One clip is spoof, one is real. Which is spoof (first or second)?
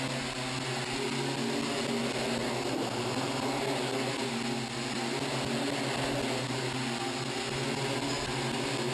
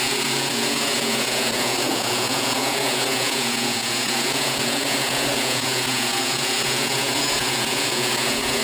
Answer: second